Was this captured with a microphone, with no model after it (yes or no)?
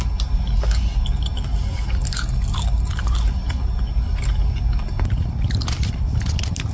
yes